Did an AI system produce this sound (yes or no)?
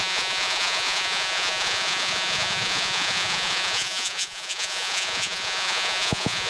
yes